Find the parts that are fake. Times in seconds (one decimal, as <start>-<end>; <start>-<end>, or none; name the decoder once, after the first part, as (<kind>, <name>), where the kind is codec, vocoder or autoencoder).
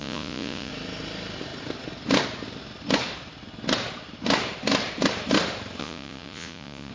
0.0-0.7 (vocoder, Vocos); 5.8-6.9